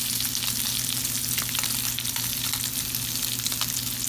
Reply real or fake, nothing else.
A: real